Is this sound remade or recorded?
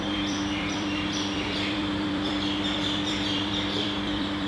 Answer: remade